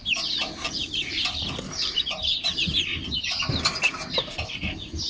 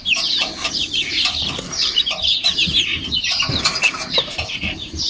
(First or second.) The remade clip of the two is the second